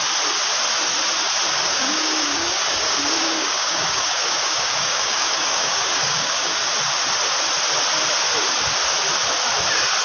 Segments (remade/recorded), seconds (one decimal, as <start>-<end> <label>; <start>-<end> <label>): 0.0-1.5 recorded; 1.5-6.6 remade; 6.6-10.0 recorded